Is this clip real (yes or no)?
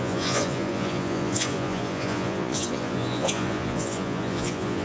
no